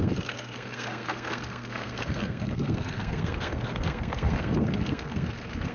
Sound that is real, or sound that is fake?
fake